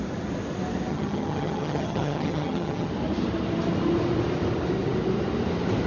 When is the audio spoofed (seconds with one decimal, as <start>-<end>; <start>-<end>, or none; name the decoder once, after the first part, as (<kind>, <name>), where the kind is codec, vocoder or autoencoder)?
0.9-2.9 (vocoder, HiFi-GAN)